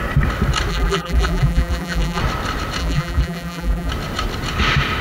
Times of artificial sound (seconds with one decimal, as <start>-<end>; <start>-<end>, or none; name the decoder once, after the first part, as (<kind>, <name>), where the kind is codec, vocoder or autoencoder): 0.7-2.2 (vocoder, BigVGAN v2); 2.8-3.9